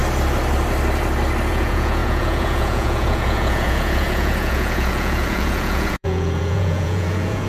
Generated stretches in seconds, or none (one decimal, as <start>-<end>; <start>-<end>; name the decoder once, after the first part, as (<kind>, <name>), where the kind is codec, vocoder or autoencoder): 1.5-7.5 (vocoder, Vocos)